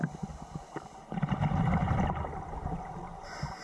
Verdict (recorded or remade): recorded